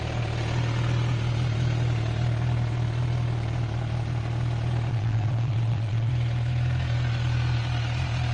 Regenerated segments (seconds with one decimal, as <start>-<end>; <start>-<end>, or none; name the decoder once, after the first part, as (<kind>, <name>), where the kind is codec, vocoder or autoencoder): 4.9-6.1 (vocoder, Vocos)